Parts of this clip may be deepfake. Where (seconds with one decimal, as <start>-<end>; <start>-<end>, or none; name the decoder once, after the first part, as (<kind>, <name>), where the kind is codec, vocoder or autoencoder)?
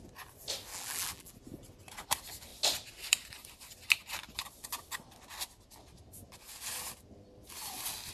0.7-1.3 (vocoder, BigVGAN v2)